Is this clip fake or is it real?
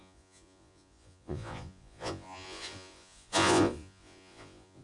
fake